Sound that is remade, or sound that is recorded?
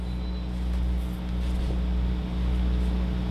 recorded